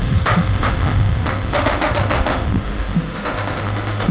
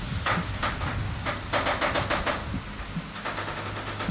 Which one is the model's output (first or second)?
first